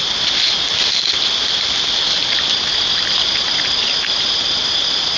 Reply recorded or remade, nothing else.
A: recorded